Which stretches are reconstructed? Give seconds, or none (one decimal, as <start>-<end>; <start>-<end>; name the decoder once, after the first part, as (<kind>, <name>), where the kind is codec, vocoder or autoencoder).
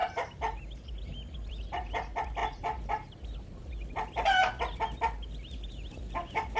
none